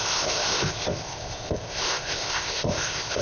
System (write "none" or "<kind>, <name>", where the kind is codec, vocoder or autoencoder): codec, ZipCodec